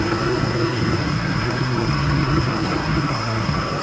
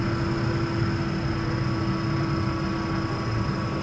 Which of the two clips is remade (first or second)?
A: first